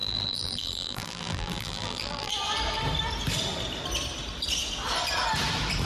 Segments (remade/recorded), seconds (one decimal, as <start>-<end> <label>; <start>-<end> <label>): 0.0-2.3 remade; 2.3-5.9 recorded